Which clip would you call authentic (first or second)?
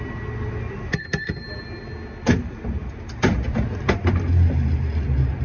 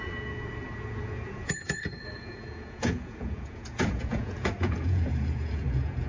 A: first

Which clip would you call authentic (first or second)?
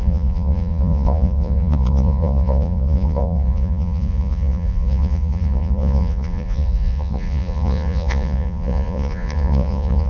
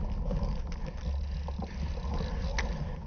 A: second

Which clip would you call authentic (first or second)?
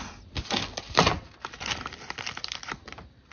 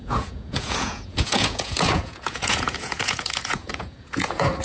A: first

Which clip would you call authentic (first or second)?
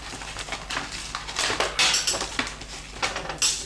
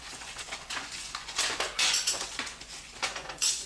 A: first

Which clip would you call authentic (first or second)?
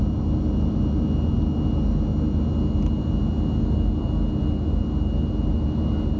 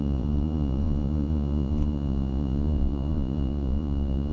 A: first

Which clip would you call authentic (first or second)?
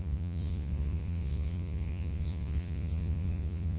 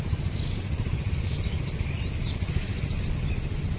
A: second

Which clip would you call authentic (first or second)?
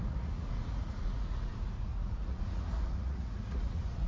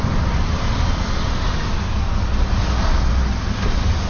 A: second